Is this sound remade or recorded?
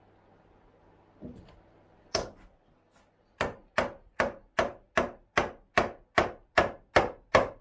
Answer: recorded